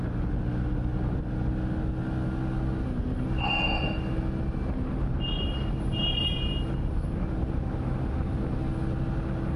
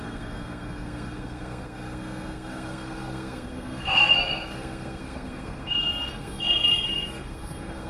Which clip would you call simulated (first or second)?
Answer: second